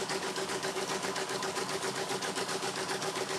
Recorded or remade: remade